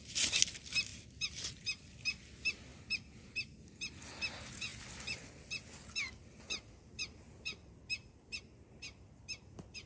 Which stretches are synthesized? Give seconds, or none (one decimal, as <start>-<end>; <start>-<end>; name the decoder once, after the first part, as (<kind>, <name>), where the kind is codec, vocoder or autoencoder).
0.9-1.6 (vocoder, BigVGAN v2); 2.7-4.0; 4.7-8.4

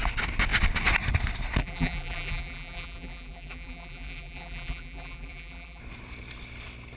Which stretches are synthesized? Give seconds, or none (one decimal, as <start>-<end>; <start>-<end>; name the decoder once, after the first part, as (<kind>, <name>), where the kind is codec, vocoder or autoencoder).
1.6-5.8 (vocoder, BigVGAN v2)

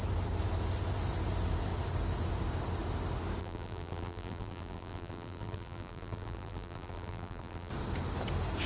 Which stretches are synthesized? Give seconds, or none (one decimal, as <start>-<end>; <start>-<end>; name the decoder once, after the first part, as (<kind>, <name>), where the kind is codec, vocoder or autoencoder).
3.4-7.7 (vocoder, BigVGAN v2)

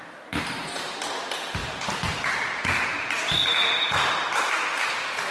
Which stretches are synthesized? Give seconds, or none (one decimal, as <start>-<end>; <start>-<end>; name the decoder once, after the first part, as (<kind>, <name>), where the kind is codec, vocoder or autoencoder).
1.6-4.1 (vocoder, BigVGAN v2)

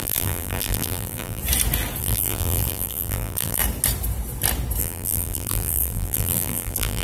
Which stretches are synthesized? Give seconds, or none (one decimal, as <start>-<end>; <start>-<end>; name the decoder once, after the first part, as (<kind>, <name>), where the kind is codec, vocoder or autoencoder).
0.0-1.4 (vocoder, BigVGAN v2); 2.0-3.6; 4.8-7.0

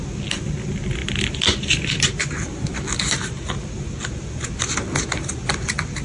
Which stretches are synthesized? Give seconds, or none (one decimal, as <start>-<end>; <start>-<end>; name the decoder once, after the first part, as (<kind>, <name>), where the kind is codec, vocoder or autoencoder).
none

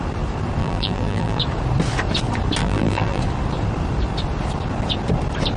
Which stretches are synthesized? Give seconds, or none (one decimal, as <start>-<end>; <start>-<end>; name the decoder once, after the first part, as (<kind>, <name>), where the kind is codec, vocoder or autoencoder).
0.6-1.4 (vocoder, BigVGAN v2); 2.6-3.2

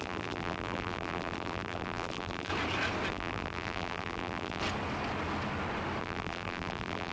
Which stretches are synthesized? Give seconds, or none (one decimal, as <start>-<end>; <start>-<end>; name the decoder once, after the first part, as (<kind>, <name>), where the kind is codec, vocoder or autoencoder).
0.0-2.5 (vocoder, BigVGAN v2); 3.1-4.6; 6.0-7.1